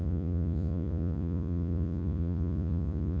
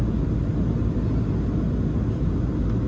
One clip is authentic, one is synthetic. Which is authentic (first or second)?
second